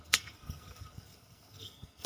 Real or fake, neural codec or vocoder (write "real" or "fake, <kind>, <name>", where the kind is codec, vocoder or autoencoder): fake, codec, SNAC